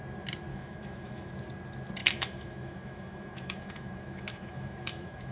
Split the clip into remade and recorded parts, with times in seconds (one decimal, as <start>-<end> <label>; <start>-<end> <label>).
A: 0.0-0.5 recorded; 0.5-1.3 remade; 1.3-2.0 recorded; 2.0-5.3 remade